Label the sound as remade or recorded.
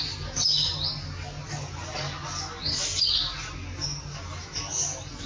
recorded